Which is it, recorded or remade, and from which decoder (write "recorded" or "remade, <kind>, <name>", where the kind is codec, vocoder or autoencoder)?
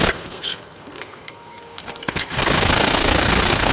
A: remade, codec, SNAC